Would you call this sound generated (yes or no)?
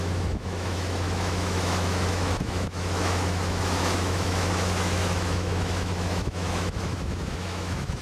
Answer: yes